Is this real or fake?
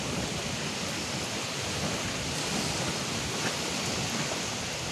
real